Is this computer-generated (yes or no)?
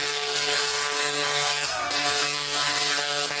yes